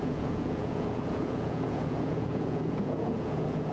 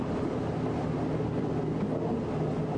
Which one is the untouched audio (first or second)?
second